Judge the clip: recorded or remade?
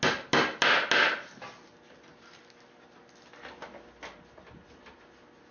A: recorded